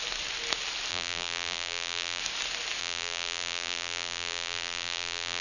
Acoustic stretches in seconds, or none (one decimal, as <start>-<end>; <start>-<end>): 0.0-0.9; 2.2-2.8